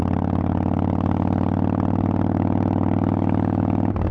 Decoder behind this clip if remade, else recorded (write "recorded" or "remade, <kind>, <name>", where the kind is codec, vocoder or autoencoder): recorded